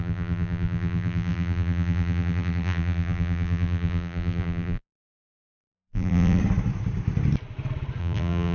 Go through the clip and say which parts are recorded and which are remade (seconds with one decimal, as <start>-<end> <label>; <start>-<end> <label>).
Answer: 0.0-6.4 remade; 6.4-8.0 recorded; 8.0-8.5 remade